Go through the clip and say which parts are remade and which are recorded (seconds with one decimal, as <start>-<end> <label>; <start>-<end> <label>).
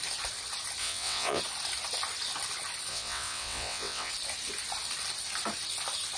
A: 0.0-0.8 recorded; 0.8-1.4 remade; 1.4-2.9 recorded; 2.9-4.1 remade; 4.1-6.2 recorded